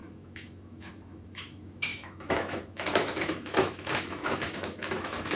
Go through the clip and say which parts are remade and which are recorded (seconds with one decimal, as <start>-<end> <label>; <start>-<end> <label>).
0.0-5.4 remade